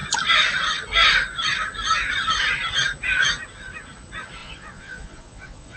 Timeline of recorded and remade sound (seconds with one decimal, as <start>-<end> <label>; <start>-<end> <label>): 0.0-4.4 recorded; 4.4-5.8 remade